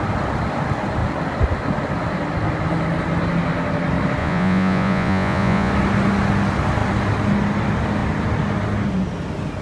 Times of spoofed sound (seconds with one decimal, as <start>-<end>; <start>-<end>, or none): 4.2-5.7